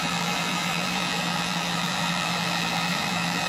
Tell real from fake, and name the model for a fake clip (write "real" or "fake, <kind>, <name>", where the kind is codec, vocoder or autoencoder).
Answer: fake, vocoder, BigVGAN v2